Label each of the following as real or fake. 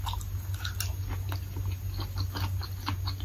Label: real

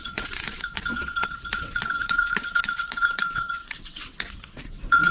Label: fake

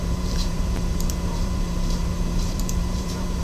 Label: fake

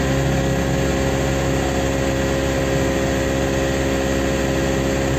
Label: real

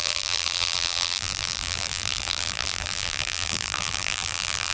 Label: fake